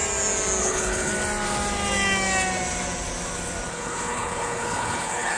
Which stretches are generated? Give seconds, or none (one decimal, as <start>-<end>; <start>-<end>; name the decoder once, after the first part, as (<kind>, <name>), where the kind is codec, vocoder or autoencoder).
0.6-1.1 (codec, HILCodec); 3.7-5.4